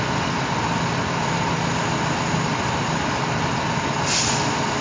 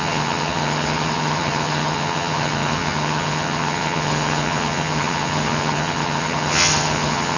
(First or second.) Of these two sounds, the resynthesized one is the second